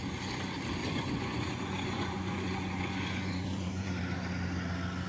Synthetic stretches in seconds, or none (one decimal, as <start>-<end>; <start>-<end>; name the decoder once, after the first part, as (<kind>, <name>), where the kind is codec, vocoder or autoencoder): 0.8-3.9 (vocoder, Vocos)